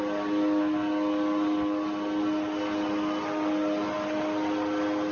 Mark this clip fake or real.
real